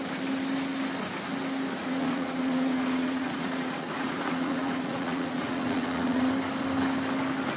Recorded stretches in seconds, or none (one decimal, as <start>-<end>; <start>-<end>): 0.0-1.8; 6.3-7.6